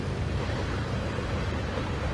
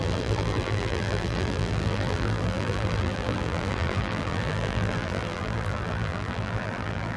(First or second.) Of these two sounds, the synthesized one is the second